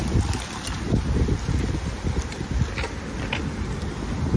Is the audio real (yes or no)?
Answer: yes